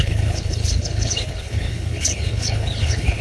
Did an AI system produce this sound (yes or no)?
yes